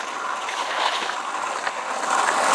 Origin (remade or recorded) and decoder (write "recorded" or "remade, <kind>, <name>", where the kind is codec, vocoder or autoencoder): recorded